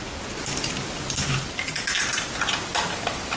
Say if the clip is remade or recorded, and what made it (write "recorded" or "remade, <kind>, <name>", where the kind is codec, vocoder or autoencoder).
recorded